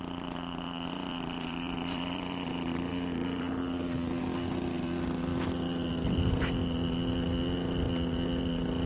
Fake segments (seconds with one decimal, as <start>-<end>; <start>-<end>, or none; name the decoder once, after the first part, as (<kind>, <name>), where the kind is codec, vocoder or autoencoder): 0.0-2.5 (vocoder, BigVGAN v2); 2.9-3.5